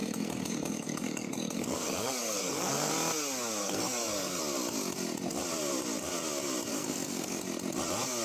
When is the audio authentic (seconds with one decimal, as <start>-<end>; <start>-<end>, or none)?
2.9-3.6; 4.4-6.7; 7.4-8.2